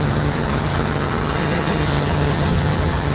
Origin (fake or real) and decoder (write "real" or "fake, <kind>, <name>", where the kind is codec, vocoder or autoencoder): fake, vocoder, HiFi-GAN